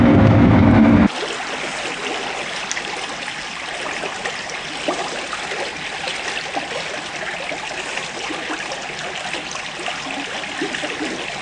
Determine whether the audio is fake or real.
real